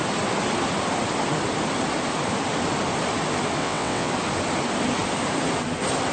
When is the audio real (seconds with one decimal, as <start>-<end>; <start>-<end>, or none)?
0.0-3.6; 4.1-6.1